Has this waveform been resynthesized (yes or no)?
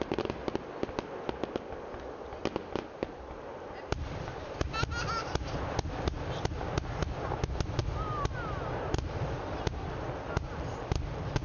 no